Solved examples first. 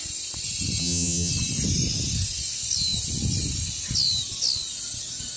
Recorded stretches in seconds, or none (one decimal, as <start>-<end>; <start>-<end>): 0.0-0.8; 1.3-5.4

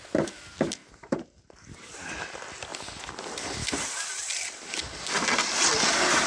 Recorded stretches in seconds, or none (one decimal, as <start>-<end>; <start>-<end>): 0.0-0.8; 2.1-6.3

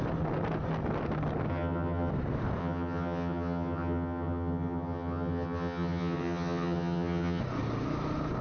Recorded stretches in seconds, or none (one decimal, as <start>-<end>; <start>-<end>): 0.0-1.5; 2.1-2.6; 7.4-8.4

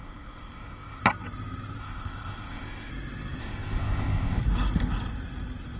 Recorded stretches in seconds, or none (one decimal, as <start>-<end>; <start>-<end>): 1.0-1.8; 2.9-3.4; 4.4-5.8